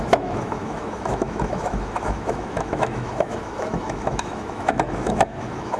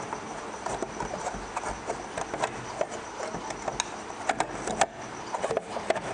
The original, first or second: second